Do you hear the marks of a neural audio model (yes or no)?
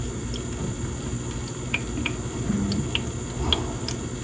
no